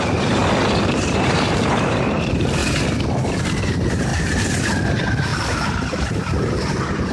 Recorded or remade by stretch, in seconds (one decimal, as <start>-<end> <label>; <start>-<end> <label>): 0.0-0.4 remade; 0.4-0.9 recorded; 0.9-2.6 remade; 2.6-3.6 recorded; 3.6-7.1 remade